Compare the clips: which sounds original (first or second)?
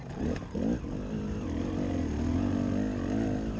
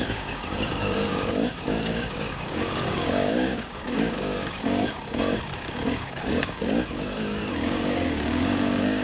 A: first